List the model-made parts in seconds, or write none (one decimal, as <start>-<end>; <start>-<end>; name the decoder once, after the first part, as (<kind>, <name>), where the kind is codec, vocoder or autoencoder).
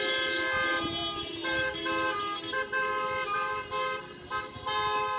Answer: none